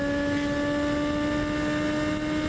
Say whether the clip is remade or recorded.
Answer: recorded